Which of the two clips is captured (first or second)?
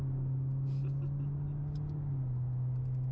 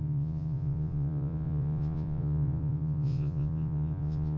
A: first